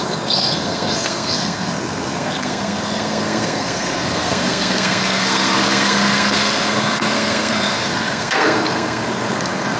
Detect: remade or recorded remade